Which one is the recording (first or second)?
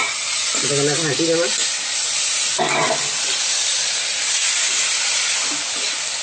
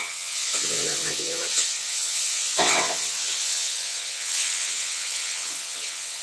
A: first